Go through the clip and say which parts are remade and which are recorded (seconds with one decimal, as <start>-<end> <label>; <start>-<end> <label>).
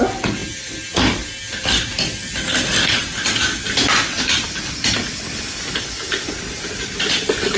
0.0-7.6 recorded